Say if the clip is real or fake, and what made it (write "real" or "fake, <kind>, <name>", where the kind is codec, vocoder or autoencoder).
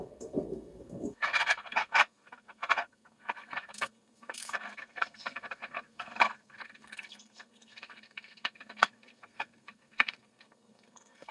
fake, codec, SNAC